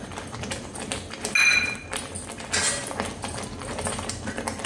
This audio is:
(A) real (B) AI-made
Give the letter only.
A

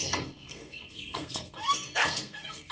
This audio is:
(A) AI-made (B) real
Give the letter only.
A